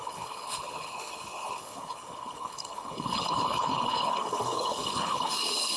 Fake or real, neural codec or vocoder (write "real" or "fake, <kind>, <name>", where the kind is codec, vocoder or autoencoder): fake, codec, HILCodec